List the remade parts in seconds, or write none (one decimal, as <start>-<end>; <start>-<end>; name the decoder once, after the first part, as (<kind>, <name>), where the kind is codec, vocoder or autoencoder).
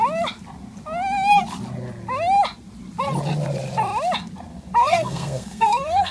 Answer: 4.8-6.1 (codec, SNAC)